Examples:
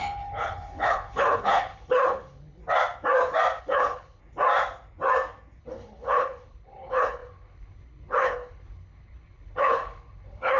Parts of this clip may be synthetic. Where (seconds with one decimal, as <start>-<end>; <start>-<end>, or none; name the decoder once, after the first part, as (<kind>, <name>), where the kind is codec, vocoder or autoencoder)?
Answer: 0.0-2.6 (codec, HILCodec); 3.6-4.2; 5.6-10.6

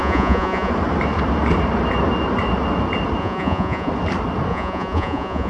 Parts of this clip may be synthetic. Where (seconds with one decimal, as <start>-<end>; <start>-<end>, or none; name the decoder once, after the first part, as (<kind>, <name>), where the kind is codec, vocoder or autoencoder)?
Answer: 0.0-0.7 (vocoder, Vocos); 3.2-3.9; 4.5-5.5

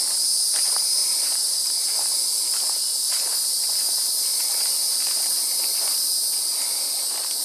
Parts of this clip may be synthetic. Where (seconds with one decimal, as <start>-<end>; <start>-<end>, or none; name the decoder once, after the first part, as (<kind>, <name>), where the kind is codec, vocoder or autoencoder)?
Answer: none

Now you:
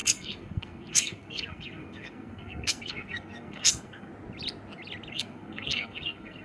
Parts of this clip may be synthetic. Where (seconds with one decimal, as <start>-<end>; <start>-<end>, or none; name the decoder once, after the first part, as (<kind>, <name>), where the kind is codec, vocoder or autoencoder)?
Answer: 0.0-4.1 (codec, SNAC); 5.1-6.4